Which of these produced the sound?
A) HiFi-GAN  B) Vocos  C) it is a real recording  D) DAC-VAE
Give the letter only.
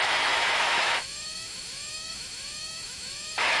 D